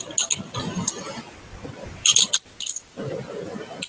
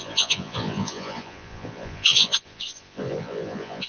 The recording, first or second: first